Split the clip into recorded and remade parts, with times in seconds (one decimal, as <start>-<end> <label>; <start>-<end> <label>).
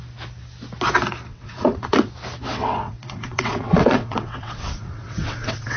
0.0-1.3 recorded; 1.3-2.1 remade; 2.1-2.5 recorded; 2.5-5.8 remade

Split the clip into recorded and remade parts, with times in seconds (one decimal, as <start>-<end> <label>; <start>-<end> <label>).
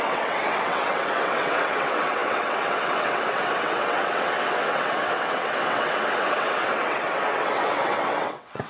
0.0-8.7 remade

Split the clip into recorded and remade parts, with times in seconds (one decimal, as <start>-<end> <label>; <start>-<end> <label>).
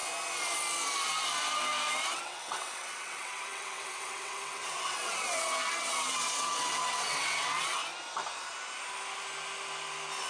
0.0-2.1 recorded; 2.1-7.8 remade; 7.8-10.3 recorded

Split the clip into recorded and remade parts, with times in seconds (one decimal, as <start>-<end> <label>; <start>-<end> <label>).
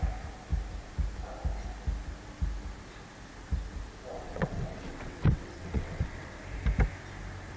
0.0-4.1 recorded; 4.1-6.4 remade; 6.4-7.6 recorded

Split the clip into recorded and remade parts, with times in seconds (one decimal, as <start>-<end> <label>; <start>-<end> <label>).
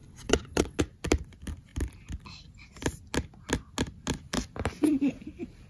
0.0-0.8 remade; 0.8-5.7 recorded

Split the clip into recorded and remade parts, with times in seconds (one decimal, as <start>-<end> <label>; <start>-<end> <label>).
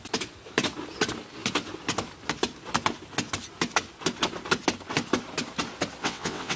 0.0-6.0 recorded; 6.0-6.6 remade